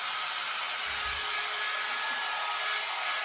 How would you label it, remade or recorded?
recorded